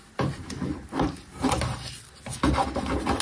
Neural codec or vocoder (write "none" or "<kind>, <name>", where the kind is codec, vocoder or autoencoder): none